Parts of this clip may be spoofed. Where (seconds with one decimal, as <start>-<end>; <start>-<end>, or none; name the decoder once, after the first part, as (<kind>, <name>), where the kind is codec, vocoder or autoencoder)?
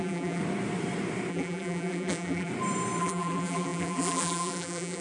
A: 0.0-0.4 (vocoder, BigVGAN v2); 1.3-2.5; 3.0-5.0